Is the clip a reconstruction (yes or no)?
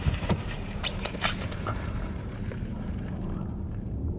yes